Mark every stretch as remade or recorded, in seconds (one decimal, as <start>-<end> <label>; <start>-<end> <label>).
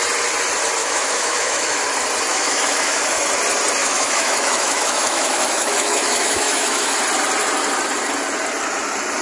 0.0-0.8 recorded; 0.8-1.8 remade; 1.8-2.3 recorded; 2.3-3.2 remade; 3.2-3.8 recorded; 3.8-7.0 remade; 7.0-9.2 recorded